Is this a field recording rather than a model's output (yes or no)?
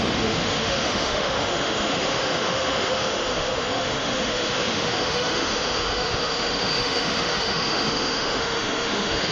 no